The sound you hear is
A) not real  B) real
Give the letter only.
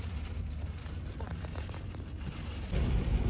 B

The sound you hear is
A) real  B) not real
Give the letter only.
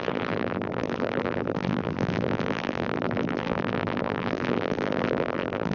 B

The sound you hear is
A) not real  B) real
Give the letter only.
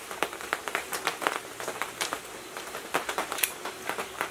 A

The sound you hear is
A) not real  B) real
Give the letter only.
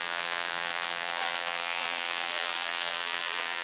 A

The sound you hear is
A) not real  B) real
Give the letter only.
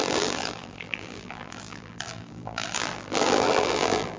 A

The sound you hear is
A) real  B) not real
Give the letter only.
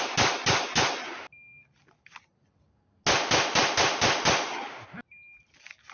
A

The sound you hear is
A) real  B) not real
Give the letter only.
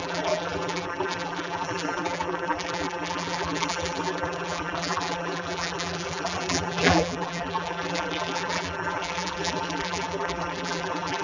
B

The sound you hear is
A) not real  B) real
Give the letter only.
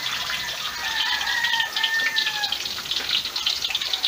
B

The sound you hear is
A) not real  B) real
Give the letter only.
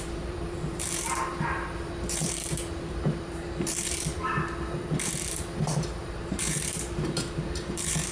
A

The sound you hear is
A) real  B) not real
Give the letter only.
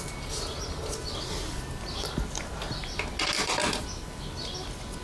A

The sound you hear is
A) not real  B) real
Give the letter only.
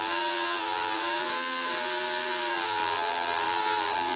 A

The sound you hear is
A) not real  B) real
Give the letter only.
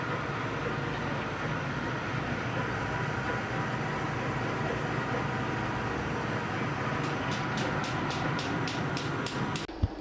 B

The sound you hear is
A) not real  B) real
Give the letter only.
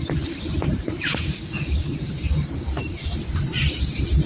A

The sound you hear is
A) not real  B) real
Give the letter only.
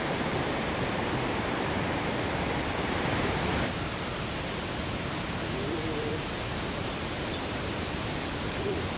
A